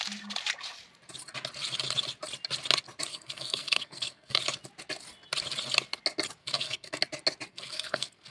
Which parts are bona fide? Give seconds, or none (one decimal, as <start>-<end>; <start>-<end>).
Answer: 0.0-3.1; 4.4-6.4; 7.0-7.5